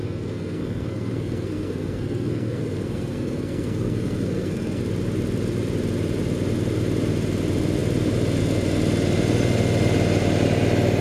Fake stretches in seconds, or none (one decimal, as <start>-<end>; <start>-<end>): 0.0-4.8